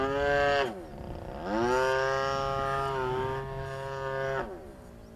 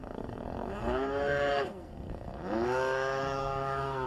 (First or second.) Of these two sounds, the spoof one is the second